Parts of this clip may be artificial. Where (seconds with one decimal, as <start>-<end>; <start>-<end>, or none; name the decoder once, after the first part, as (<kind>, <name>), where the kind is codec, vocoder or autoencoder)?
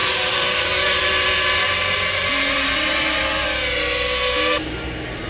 0.0-3.2 (vocoder, BigVGAN v2)